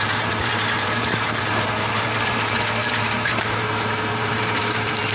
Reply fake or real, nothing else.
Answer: fake